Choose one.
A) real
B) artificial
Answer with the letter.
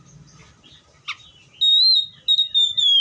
A